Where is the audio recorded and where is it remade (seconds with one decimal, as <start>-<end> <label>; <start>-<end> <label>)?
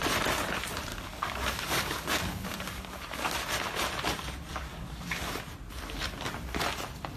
0.0-0.9 recorded; 0.9-3.3 remade; 3.3-4.5 recorded; 4.5-5.3 remade; 5.3-7.2 recorded